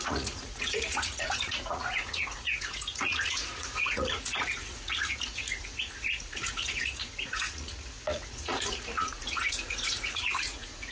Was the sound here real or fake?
fake